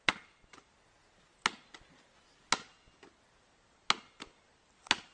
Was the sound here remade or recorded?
recorded